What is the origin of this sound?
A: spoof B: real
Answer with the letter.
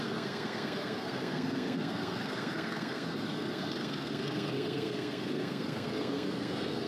A